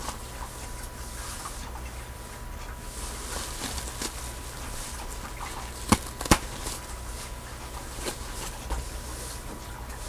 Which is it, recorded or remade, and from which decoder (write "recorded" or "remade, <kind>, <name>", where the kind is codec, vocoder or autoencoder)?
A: recorded